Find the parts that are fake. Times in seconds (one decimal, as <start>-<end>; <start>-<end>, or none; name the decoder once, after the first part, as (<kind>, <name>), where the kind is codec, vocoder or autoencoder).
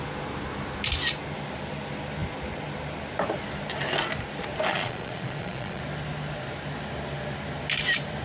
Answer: 4.7-5.8 (vocoder, Vocos)